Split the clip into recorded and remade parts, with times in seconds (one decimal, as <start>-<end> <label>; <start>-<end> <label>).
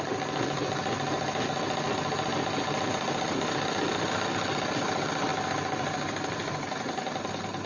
0.0-5.3 recorded; 5.3-6.5 remade; 6.5-7.7 recorded